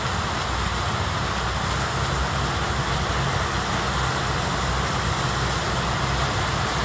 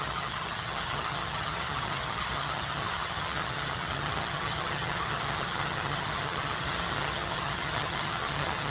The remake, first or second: second